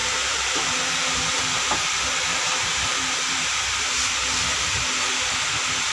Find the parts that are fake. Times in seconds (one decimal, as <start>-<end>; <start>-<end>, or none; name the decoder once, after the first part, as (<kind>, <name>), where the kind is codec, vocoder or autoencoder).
0.0-3.5 (vocoder, BigVGAN v2)